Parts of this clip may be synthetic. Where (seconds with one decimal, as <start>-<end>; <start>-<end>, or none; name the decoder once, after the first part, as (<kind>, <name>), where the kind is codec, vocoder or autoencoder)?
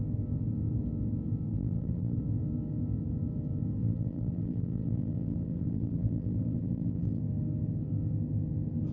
1.5-2.2 (vocoder, BigVGAN v2); 3.8-7.2